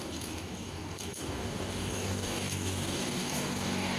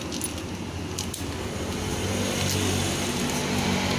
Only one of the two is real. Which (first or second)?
second